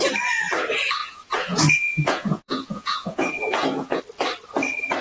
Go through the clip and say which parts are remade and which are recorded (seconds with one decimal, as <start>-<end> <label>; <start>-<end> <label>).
0.0-1.0 recorded; 1.0-4.0 remade; 4.0-5.0 recorded